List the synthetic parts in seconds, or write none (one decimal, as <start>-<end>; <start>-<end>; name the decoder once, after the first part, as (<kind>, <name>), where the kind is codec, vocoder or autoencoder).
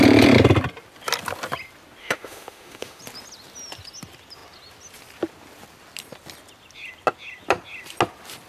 2.0-3.0 (autoencoder, DAC-VAE)